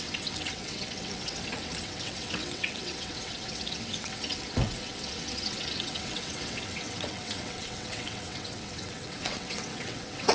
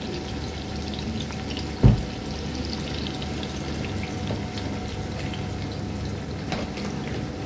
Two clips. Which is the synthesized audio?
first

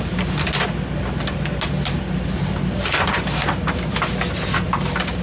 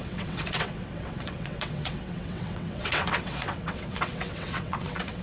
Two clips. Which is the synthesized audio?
second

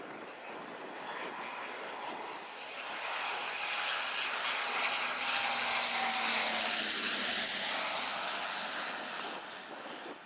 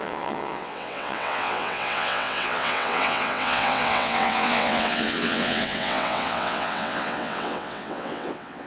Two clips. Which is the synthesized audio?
second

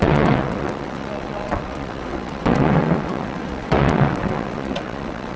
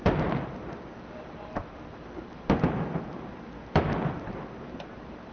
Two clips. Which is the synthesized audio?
first